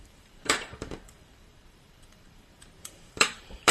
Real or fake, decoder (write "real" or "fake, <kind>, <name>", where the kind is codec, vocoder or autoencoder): fake, vocoder, BigVGAN v2